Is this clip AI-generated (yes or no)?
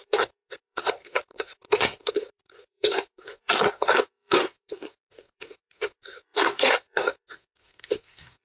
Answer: yes